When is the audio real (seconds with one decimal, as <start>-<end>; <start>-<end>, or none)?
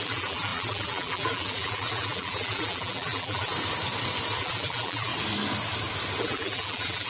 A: 3.5-4.4; 5.1-6.2